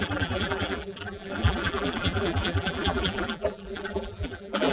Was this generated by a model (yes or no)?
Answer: yes